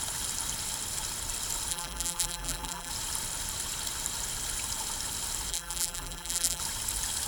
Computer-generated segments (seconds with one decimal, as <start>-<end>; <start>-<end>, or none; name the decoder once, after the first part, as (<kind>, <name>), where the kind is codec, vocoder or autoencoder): 1.7-2.9 (vocoder, BigVGAN v2); 5.5-6.6